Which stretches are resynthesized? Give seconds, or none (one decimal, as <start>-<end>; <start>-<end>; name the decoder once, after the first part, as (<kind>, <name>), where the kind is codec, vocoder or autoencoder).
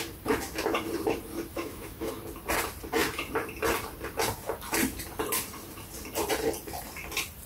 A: 1.5-2.1 (autoencoder, DAC-VAE)